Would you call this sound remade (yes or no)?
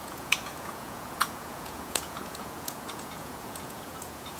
yes